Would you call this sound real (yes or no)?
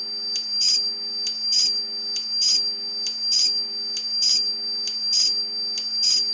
yes